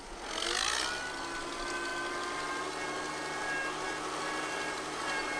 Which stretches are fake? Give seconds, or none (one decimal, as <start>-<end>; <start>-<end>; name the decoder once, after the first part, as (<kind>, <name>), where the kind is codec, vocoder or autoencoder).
none